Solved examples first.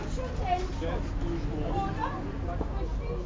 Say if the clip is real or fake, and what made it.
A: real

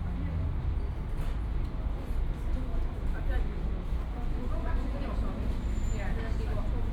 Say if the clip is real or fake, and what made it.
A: real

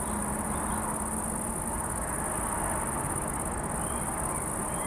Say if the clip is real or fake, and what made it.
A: real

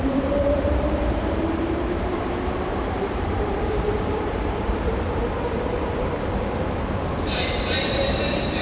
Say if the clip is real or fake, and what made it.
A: fake, vocoder, BigVGAN v2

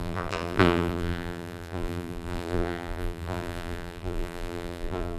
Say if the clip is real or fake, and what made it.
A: fake, vocoder, BigVGAN v2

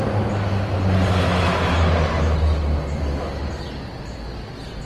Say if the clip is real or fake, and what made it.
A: real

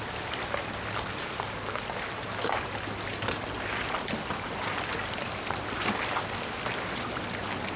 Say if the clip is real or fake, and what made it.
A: real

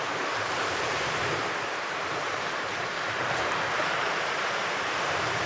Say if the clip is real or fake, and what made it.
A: fake, vocoder, BigVGAN v2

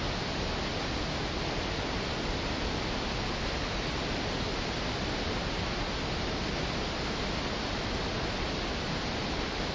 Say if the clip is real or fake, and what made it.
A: real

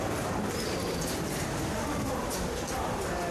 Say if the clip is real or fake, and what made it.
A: real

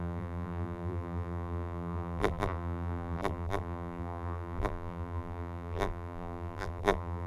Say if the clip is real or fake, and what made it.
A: fake, vocoder, BigVGAN v2